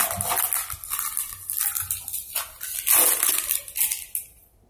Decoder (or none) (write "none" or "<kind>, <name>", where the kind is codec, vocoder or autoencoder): none